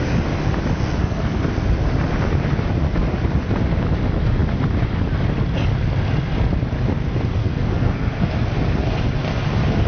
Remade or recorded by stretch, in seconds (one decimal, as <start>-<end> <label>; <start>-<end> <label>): 0.0-1.0 recorded; 1.0-1.5 remade; 1.5-7.4 recorded; 7.4-8.3 remade; 8.3-9.9 recorded

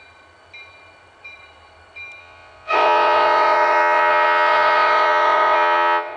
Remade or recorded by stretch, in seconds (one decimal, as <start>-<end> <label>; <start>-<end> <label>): 0.0-2.2 recorded; 2.2-6.2 remade

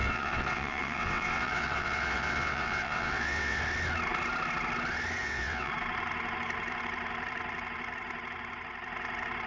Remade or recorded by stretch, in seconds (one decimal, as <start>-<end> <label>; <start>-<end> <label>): 0.0-3.6 remade; 3.6-5.2 recorded; 5.2-5.7 remade; 5.7-9.5 recorded

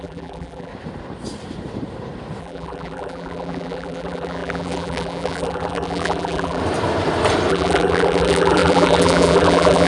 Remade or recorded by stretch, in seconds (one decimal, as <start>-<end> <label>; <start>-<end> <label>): 0.0-0.7 remade; 0.7-2.4 recorded; 2.4-6.6 remade; 6.6-7.5 recorded; 7.5-9.9 remade

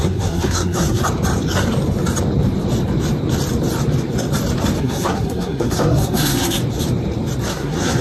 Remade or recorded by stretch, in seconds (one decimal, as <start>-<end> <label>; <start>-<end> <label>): 0.0-1.0 remade; 1.0-4.8 recorded; 4.8-6.6 remade; 6.6-7.5 recorded; 7.5-8.0 remade

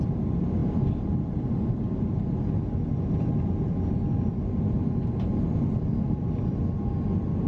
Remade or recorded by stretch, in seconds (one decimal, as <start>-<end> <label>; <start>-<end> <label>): 0.0-7.5 recorded

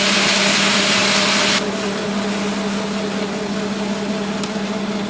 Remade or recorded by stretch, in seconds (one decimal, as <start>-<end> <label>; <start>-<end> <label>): 0.0-5.1 recorded